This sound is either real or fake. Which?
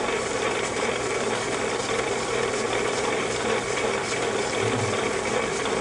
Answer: fake